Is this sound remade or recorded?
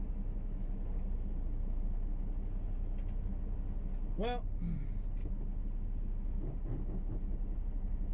recorded